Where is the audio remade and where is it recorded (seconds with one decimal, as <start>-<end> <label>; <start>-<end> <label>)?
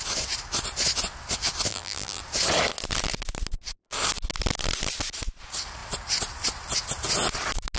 0.0-1.7 recorded; 1.7-2.2 remade; 2.2-7.8 recorded